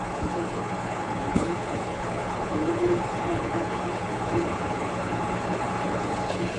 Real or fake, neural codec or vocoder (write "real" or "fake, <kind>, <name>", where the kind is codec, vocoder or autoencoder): fake, codec, HILCodec